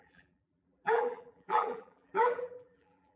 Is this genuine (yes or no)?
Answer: no